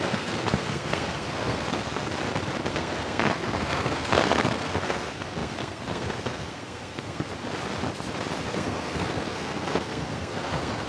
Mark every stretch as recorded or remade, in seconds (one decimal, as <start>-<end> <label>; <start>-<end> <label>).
0.0-2.1 remade; 2.1-2.7 recorded; 2.7-7.3 remade; 7.3-8.4 recorded; 8.4-10.9 remade